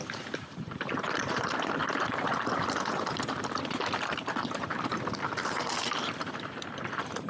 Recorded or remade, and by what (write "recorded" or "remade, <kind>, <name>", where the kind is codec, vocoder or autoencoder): remade, vocoder, BigVGAN v2